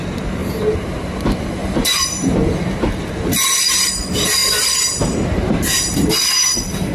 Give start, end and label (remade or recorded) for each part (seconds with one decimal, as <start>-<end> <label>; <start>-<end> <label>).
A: 0.0-0.4 recorded; 0.4-1.1 remade; 1.1-1.6 recorded; 1.6-2.5 remade; 2.5-4.4 recorded; 4.4-6.1 remade; 6.1-6.9 recorded